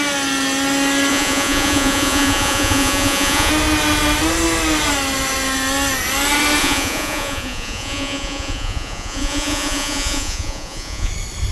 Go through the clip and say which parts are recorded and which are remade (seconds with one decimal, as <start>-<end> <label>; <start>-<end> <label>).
0.0-1.1 recorded; 1.1-3.5 remade; 3.5-6.6 recorded; 6.6-11.1 remade; 11.1-11.5 recorded